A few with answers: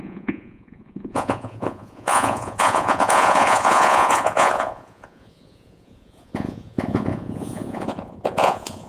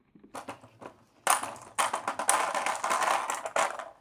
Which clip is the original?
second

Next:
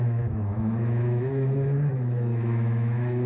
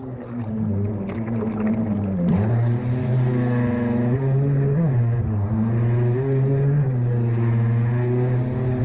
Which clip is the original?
second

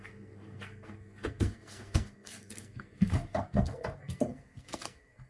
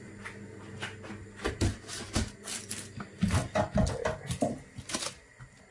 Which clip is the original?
second